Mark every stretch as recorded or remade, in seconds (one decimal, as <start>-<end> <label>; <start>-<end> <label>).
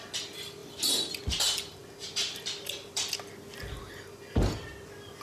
0.0-5.2 recorded